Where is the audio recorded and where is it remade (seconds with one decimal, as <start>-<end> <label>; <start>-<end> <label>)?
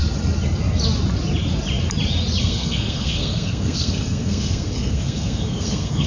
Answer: 0.0-2.4 recorded; 2.4-6.1 remade